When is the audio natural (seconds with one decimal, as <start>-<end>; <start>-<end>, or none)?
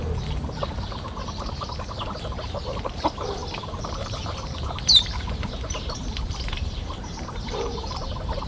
none